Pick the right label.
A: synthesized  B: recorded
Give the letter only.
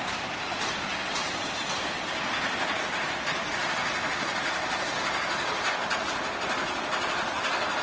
B